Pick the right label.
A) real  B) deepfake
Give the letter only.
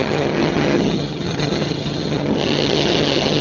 B